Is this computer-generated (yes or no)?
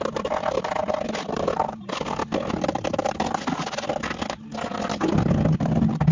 no